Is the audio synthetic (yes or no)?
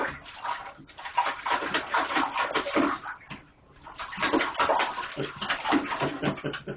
no